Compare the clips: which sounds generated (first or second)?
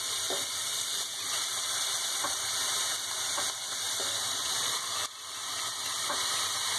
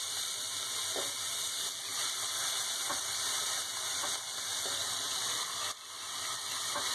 first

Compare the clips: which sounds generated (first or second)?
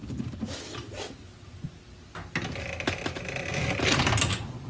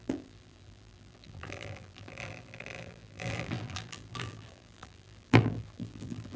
second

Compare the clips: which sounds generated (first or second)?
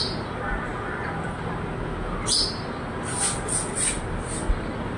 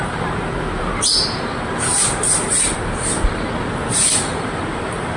second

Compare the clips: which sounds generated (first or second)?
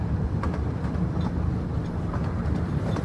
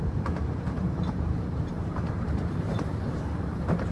second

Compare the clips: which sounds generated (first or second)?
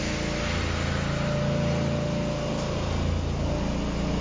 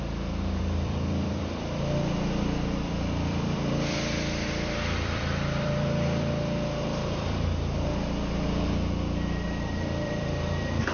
second